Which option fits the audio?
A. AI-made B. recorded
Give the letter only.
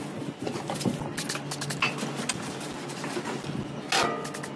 B